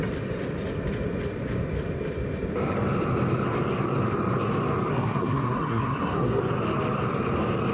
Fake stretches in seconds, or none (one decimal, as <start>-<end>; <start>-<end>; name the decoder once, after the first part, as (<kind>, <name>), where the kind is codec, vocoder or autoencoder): 4.9-6.4 (codec, SNAC)